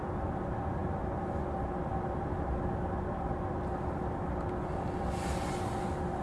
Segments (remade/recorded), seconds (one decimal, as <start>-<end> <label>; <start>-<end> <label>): 0.0-6.2 recorded